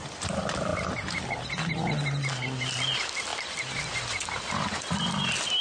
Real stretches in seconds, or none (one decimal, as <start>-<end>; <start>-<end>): 0.0-5.6